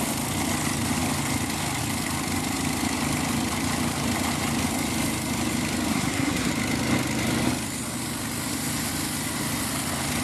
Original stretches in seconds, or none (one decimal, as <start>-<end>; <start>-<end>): 0.0-5.9; 6.5-10.2